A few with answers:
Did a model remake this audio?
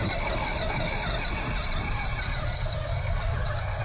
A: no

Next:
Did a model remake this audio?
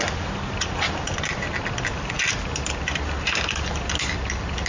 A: no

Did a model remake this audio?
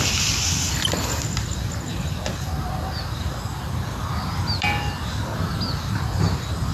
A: no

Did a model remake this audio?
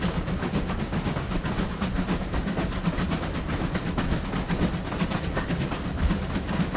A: no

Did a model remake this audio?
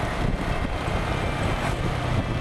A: no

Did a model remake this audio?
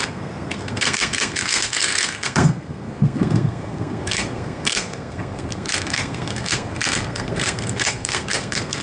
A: yes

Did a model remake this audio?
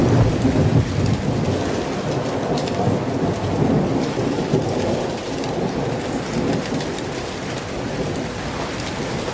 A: no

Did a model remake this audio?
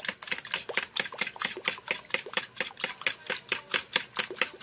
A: no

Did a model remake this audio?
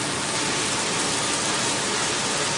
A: no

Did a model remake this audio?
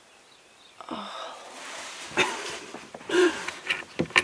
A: no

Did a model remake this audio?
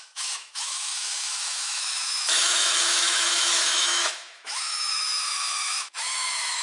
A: yes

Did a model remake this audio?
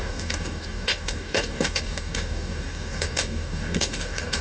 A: yes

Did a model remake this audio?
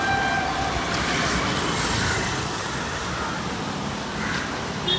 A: no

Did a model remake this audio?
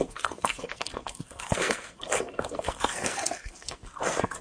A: yes